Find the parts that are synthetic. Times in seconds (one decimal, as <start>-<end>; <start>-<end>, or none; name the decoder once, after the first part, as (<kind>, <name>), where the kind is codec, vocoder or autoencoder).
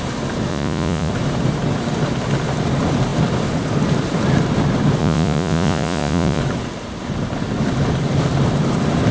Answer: 0.5-1.1 (vocoder, Vocos); 5.0-6.4